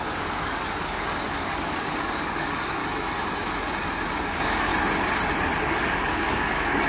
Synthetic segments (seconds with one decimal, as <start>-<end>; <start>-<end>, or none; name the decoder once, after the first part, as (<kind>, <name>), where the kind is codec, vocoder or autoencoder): 0.0-2.8 (codec, DAC); 4.2-4.7; 5.6-6.9